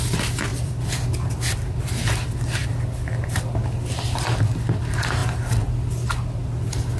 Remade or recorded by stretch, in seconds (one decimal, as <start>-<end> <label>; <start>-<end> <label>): 0.0-0.5 recorded; 0.5-1.9 remade; 1.9-2.6 recorded; 2.6-3.4 remade; 3.4-7.0 recorded

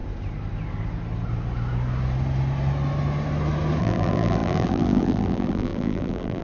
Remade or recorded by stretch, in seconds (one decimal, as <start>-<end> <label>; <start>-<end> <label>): 0.0-3.8 recorded; 3.8-6.4 remade

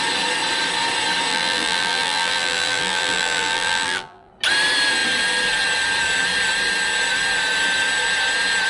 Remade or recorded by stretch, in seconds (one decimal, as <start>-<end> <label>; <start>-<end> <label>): 0.0-1.3 recorded; 1.3-4.3 remade; 4.3-8.7 recorded

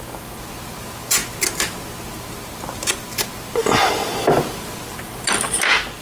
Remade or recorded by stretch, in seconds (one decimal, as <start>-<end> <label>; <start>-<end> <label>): 0.0-6.0 recorded

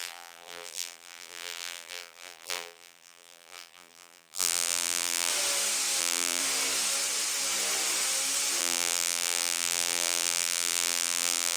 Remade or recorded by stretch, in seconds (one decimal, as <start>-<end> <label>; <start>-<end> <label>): 0.0-5.3 remade; 5.3-6.0 recorded; 6.0-6.4 remade; 6.4-8.6 recorded; 8.6-11.6 remade